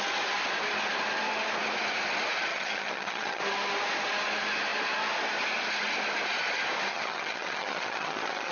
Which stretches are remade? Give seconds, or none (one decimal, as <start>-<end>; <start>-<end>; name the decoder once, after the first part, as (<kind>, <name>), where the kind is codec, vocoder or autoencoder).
2.5-3.4 (vocoder, HiFi-GAN); 6.9-8.5